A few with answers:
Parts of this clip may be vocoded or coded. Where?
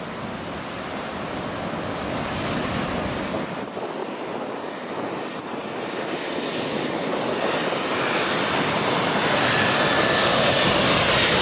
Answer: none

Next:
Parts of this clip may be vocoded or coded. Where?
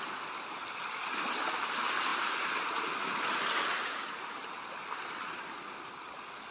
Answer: none